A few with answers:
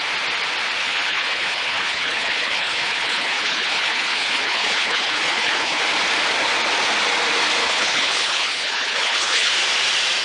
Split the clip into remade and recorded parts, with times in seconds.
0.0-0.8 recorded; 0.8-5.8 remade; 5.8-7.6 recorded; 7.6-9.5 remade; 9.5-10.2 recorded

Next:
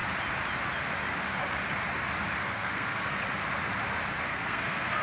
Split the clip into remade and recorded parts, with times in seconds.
0.0-2.4 recorded; 2.4-3.2 remade; 3.2-4.2 recorded; 4.2-5.0 remade

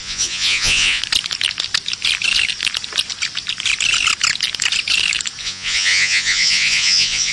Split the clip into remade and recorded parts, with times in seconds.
0.0-1.0 remade; 1.0-5.4 recorded; 5.4-7.3 remade